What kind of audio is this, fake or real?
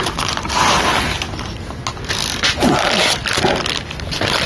real